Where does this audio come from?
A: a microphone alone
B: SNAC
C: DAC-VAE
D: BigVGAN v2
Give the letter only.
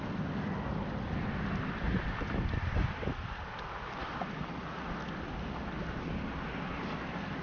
A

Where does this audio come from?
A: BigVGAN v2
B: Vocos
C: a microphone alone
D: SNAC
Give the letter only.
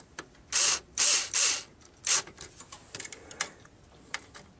C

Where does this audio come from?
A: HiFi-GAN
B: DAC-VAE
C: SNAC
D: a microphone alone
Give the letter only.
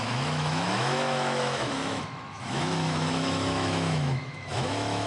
B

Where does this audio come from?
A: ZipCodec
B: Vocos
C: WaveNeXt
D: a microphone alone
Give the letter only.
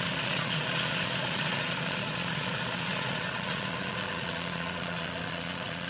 B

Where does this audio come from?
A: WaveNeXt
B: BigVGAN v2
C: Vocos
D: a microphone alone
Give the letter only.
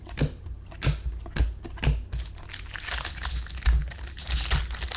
D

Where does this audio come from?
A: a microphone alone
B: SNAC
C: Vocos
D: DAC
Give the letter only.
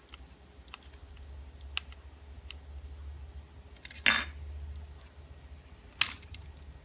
A